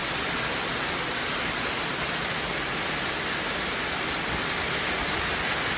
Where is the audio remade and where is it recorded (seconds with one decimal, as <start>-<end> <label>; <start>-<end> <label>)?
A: 0.0-5.8 recorded